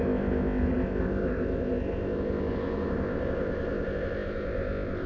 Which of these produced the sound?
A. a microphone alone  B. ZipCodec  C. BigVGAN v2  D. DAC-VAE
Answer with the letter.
B